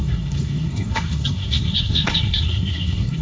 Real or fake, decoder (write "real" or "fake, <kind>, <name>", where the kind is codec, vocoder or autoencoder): fake, codec, SNAC